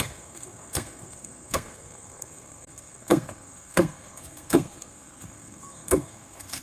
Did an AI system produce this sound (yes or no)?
yes